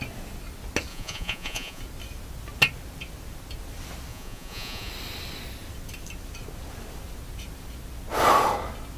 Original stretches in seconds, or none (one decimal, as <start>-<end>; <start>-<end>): 0.0-0.9; 1.8-4.1; 4.9-9.0